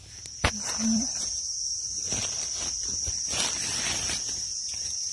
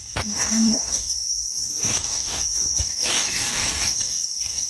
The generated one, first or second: second